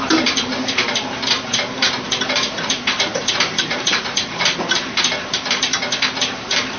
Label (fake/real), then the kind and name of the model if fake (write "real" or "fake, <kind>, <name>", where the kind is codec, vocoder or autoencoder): fake, vocoder, BigVGAN v2